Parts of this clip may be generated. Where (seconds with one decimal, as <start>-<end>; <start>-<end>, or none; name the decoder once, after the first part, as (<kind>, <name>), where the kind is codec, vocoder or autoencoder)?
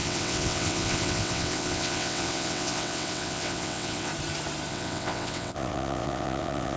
0.0-4.1 (vocoder, WaveNeXt); 4.7-6.8